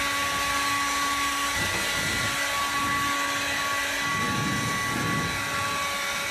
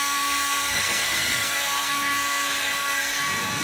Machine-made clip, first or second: second